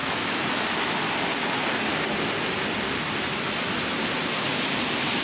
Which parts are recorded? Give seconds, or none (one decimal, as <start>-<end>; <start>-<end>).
1.0-5.2